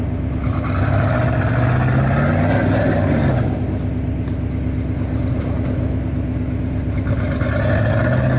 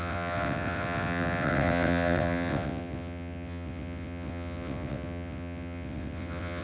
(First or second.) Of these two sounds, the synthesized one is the second